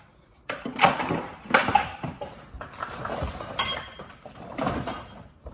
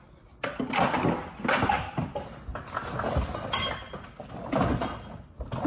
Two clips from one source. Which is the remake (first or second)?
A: first